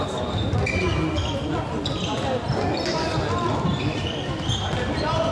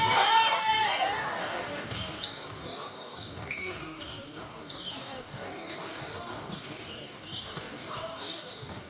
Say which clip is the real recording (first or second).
first